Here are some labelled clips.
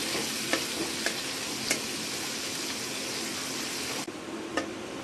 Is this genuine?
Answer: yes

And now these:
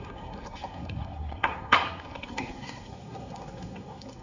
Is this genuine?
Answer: no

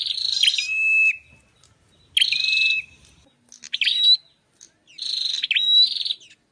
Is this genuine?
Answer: yes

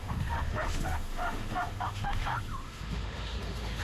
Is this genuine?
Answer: no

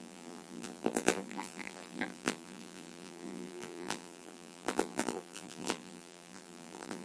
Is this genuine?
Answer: no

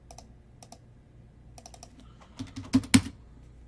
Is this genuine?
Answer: yes